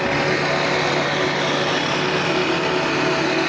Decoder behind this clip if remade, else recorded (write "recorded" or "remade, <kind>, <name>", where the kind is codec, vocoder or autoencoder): recorded